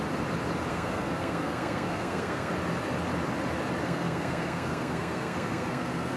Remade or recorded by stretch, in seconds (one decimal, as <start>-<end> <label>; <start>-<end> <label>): 0.0-0.7 recorded; 0.7-2.5 remade; 2.5-3.8 recorded; 3.8-6.2 remade